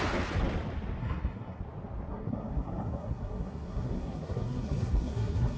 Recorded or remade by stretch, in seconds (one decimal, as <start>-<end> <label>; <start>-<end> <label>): 0.0-1.0 recorded; 1.0-1.6 remade; 1.6-2.1 recorded; 2.1-5.6 remade